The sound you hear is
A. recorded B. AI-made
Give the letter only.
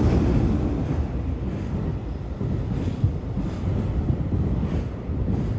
B